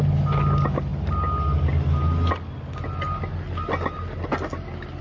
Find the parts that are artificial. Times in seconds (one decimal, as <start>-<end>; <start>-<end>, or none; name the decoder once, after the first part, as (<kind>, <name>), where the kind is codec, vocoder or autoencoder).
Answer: none